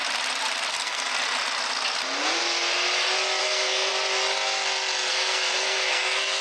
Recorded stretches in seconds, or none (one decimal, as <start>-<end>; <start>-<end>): 0.0-0.7; 1.1-3.4; 3.9-5.1